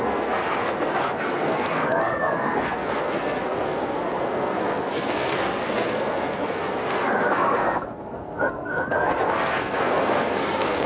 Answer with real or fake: fake